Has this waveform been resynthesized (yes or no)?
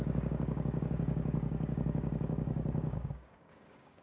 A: yes